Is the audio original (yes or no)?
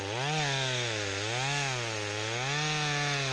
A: yes